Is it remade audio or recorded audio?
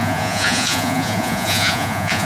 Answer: remade